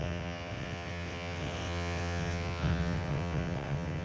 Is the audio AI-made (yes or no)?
yes